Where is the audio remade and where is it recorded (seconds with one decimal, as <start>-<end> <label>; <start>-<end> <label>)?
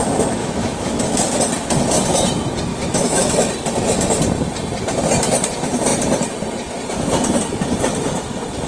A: 0.0-0.4 recorded; 0.4-1.0 remade; 1.0-2.7 recorded; 2.7-3.5 remade; 3.5-8.7 recorded